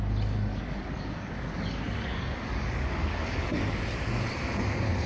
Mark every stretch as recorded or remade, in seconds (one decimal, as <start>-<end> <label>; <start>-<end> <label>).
0.0-0.5 recorded; 0.5-3.6 remade; 3.6-5.1 recorded